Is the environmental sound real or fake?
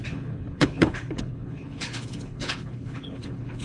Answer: fake